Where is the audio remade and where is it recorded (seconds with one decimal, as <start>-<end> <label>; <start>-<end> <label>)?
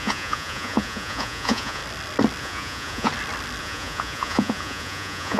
0.0-1.8 remade; 1.8-2.4 recorded; 2.4-3.1 remade; 3.1-3.6 recorded; 3.6-5.4 remade